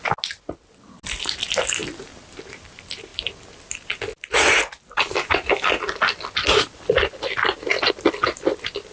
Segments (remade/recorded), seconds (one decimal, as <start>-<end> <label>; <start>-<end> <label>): 0.0-8.9 recorded